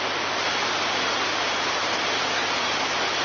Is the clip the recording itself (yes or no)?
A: yes